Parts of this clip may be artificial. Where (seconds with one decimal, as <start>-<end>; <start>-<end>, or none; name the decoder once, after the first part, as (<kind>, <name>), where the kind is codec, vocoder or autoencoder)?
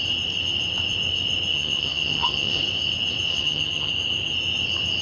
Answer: 1.5-2.6 (vocoder, HiFi-GAN); 3.3-3.9